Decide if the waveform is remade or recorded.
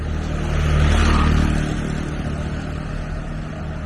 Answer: recorded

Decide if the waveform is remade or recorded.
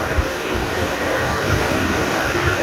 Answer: remade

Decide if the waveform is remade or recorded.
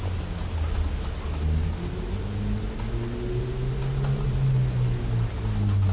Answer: recorded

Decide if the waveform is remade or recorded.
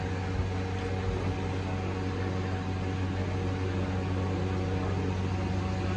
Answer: recorded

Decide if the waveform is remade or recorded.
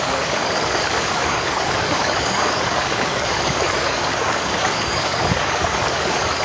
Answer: remade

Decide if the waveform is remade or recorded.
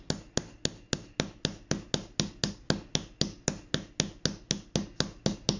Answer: recorded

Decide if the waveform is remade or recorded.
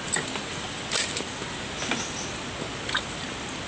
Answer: recorded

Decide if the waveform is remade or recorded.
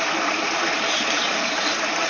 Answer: recorded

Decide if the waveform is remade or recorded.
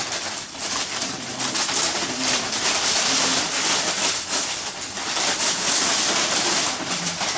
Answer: recorded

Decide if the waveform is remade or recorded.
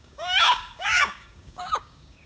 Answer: remade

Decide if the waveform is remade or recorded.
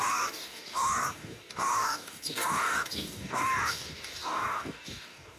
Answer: remade